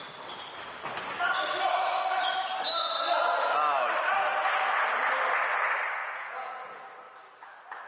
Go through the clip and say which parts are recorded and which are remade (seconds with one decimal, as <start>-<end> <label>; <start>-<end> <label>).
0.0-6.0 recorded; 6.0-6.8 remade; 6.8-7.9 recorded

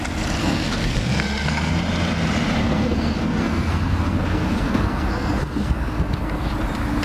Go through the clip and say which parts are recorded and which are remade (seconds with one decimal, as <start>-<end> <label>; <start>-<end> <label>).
0.0-0.4 recorded; 0.4-1.7 remade; 1.7-2.6 recorded; 2.6-6.5 remade; 6.5-7.0 recorded

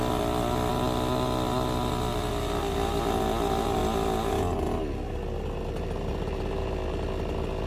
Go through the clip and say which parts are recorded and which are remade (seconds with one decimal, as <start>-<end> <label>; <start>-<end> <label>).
0.0-7.7 recorded

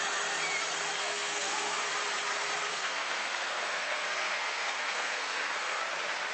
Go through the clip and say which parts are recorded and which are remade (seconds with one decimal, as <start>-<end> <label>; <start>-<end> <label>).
0.0-1.0 recorded; 1.0-1.8 remade; 1.8-2.7 recorded; 2.7-5.8 remade; 5.8-6.3 recorded

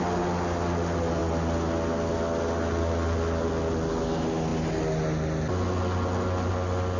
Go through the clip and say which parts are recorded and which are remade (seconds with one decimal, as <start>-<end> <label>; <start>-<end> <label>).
0.0-7.0 recorded

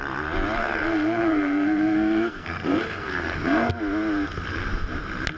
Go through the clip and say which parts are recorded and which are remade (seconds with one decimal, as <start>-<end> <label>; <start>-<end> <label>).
0.0-0.6 recorded; 0.6-3.7 remade; 3.7-5.4 recorded